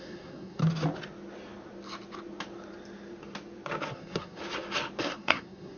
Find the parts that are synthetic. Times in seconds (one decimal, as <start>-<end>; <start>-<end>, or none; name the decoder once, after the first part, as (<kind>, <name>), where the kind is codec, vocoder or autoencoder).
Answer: 0.0-0.6 (codec, SNAC); 3.9-4.4; 5.0-5.8